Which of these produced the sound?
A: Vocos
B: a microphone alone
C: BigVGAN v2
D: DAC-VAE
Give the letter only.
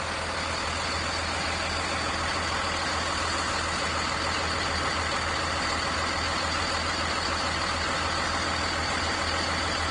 B